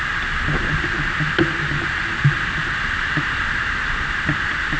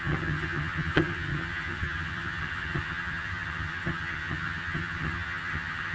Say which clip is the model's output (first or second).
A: second